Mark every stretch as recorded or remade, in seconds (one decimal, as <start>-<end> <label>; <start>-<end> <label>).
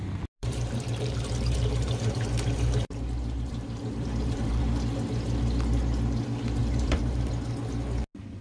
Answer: 0.0-0.4 recorded; 0.4-4.6 remade; 4.6-6.6 recorded; 6.6-7.3 remade; 7.3-8.4 recorded